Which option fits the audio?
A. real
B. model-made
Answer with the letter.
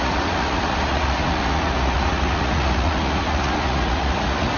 B